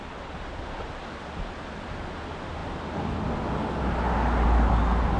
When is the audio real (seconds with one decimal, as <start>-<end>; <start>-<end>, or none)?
0.0-5.2